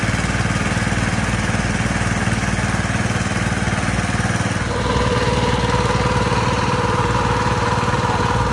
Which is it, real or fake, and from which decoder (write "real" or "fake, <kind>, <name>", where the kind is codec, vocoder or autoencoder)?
real